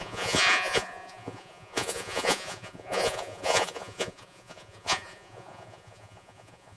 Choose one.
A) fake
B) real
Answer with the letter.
A